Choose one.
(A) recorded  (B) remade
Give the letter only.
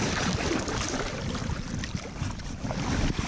B